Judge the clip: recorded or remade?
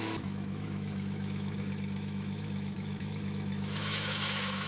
remade